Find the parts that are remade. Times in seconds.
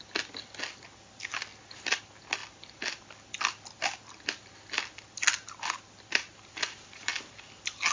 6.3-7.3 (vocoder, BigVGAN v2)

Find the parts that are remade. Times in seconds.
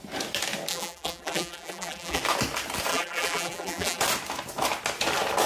0.7-2.2 (vocoder, BigVGAN v2); 2.9-4.0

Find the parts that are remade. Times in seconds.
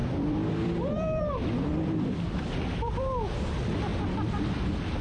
0.0-1.2 (vocoder, BigVGAN v2); 1.7-2.4; 3.9-5.0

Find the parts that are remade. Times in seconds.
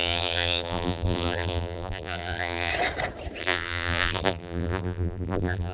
0.0-2.7 (vocoder, BigVGAN v2); 3.4-5.7